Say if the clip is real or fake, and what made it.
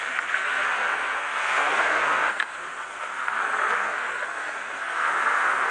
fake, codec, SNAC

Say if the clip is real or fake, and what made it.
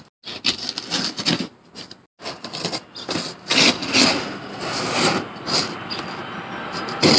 real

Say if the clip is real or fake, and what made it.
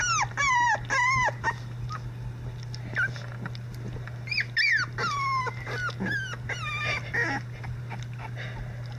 real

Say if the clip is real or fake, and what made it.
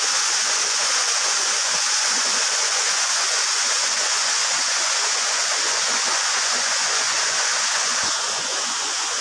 fake, vocoder, Vocos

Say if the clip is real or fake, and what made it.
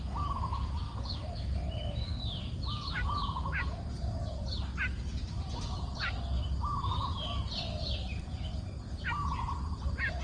real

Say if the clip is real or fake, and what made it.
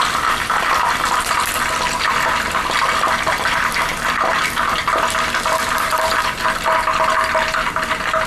real